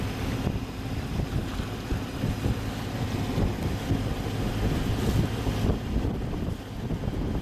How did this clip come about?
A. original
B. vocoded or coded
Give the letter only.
A